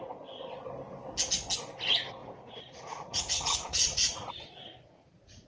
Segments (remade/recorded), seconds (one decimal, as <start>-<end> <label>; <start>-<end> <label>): 0.0-2.2 recorded; 2.2-5.5 remade